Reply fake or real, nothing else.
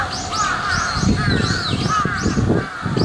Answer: real